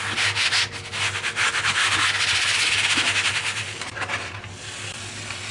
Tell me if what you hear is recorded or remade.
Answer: recorded